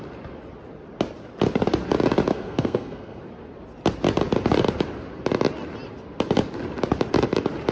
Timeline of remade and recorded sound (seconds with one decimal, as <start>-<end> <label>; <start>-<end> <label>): 0.0-2.3 recorded; 2.3-3.2 remade; 3.2-7.7 recorded